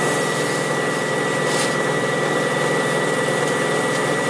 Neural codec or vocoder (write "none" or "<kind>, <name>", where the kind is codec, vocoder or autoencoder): none